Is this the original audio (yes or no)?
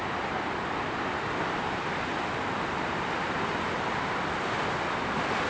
yes